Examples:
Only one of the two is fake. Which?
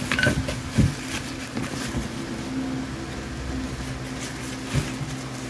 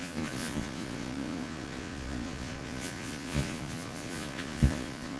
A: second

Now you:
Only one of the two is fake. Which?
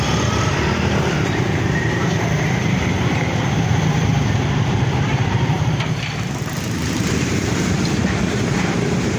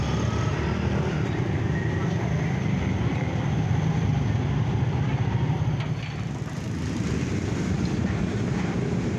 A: first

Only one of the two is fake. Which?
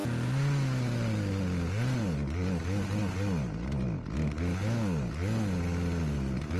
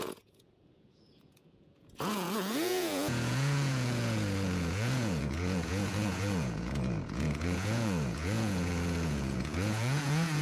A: second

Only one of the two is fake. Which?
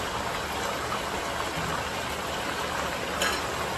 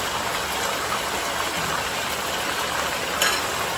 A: second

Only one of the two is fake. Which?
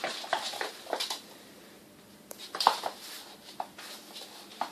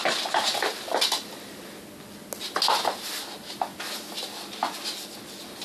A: first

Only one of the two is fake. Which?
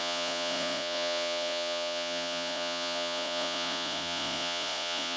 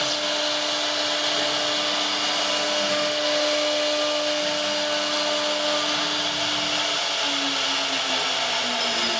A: first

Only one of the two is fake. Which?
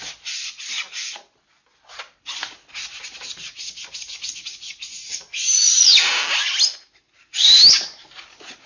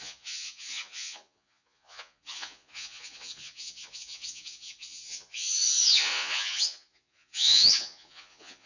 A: second